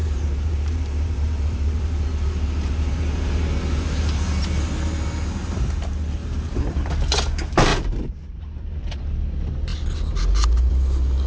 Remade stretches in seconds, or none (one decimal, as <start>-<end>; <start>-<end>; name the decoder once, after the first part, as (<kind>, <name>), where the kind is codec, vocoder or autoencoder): 0.0-1.8 (vocoder, BigVGAN v2); 6.2-6.9; 7.7-9.1